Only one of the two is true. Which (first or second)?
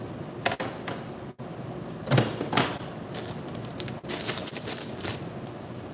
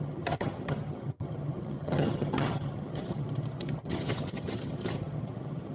first